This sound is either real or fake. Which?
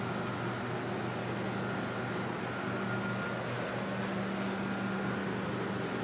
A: real